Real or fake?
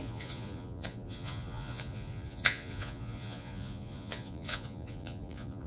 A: fake